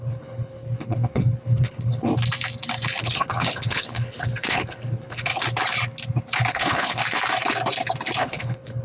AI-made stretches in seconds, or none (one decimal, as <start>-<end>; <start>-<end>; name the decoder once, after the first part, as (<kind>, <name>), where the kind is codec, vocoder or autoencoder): 0.0-2.1 (codec, HILCodec); 3.0-5.3; 6.5-7.0; 8.2-8.8